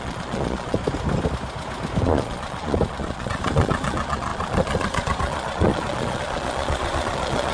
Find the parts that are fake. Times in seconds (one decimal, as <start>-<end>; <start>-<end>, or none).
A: 0.0-0.8; 2.0-7.5